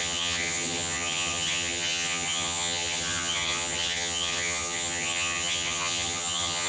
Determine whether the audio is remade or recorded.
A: remade